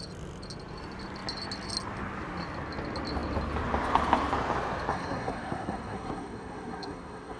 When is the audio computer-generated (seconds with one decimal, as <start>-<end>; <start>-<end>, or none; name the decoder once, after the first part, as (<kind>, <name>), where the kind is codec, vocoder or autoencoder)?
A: 4.9-7.4 (codec, SNAC)